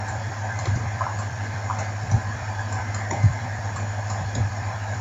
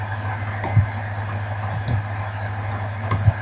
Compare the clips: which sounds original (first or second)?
second